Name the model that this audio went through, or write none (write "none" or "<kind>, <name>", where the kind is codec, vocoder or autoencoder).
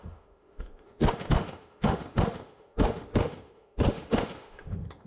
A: autoencoder, DAC-VAE